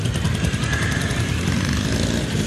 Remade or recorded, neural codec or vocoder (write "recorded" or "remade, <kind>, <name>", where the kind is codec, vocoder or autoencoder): recorded